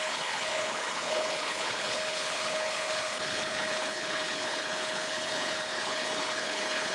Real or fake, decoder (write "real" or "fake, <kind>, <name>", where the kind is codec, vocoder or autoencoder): fake, codec, HILCodec